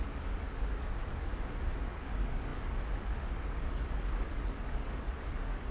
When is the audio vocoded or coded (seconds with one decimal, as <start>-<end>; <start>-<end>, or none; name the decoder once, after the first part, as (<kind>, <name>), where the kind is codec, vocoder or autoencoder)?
0.0-1.3 (codec, DAC); 1.8-5.7